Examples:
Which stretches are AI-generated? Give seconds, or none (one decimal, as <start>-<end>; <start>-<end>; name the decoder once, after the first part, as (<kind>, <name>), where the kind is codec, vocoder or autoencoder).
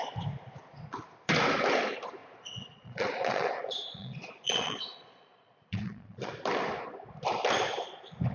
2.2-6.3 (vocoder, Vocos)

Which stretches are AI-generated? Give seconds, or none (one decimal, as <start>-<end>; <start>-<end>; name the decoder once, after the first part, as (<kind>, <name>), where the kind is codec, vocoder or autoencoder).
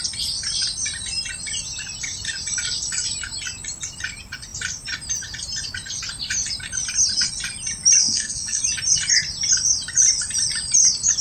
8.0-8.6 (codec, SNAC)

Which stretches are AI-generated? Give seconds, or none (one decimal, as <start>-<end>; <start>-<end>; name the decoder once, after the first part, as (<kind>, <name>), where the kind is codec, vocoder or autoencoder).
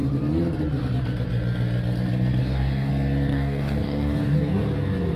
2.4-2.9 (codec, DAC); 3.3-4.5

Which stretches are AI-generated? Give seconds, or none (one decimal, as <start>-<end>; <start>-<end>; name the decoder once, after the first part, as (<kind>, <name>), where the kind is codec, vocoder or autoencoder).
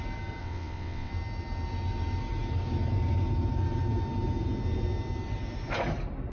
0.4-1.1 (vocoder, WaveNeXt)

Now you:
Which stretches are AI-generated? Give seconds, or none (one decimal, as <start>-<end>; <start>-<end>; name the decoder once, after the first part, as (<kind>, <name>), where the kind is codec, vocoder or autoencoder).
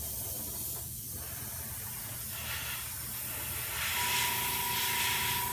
0.0-2.0 (vocoder, BigVGAN v2); 4.8-5.5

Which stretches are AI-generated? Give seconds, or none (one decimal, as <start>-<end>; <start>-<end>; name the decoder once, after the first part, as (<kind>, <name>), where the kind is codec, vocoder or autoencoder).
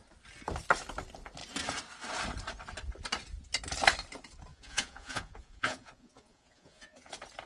4.5-7.1 (vocoder, Vocos)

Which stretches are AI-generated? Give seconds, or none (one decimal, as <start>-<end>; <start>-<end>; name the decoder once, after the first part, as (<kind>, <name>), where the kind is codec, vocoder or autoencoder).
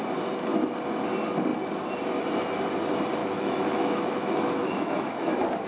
3.2-5.3 (autoencoder, DAC-VAE)